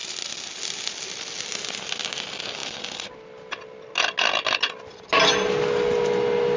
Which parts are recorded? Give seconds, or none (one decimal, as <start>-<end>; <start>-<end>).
0.0-6.6